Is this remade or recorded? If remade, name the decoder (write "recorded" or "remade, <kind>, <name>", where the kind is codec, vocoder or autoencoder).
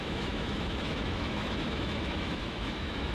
remade, autoencoder, DAC-VAE